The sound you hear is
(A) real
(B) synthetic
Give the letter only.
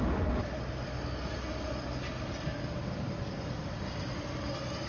A